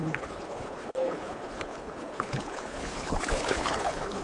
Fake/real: fake